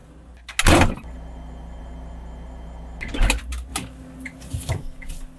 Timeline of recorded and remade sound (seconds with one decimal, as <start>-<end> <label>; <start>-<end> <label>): 0.0-5.4 recorded